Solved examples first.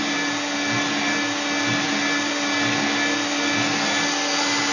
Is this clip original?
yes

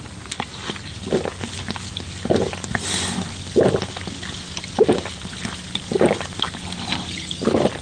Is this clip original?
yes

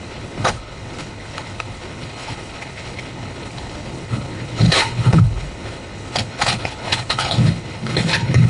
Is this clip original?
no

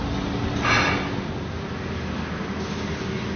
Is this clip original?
yes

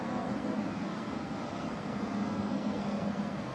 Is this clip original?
no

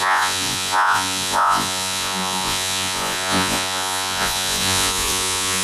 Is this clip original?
no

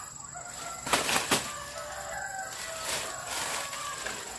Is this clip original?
yes